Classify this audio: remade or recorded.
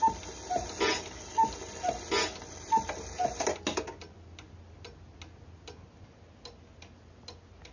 recorded